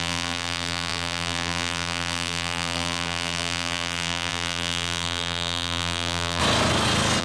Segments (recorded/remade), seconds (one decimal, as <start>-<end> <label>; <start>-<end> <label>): 0.0-6.4 remade; 6.4-7.2 recorded

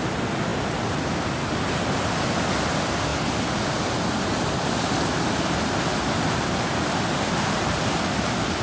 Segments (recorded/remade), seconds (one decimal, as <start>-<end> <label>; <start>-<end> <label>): 0.0-8.6 recorded